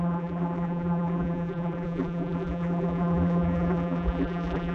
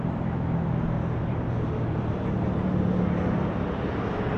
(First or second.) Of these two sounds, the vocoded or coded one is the first